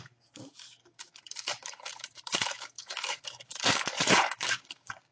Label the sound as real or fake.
fake